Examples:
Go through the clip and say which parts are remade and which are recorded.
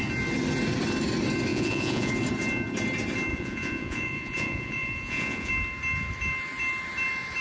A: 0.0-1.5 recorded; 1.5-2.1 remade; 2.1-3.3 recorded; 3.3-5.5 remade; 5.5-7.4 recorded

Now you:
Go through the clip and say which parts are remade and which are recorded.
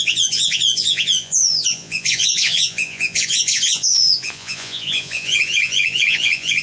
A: 0.0-6.6 remade